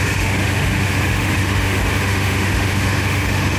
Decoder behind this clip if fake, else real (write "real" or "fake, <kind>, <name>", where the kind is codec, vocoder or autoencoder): fake, autoencoder, DAC-VAE